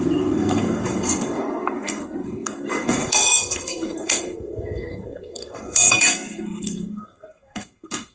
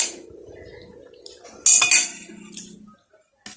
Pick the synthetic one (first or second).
first